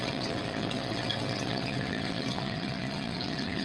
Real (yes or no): no